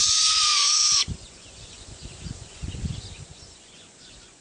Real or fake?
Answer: fake